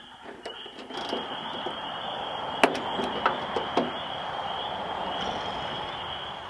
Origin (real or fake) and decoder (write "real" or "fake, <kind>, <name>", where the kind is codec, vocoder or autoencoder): real